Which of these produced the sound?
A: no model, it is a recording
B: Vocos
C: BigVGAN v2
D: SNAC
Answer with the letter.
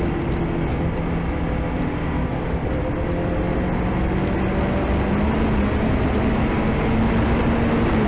A